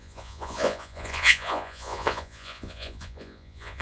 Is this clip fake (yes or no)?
yes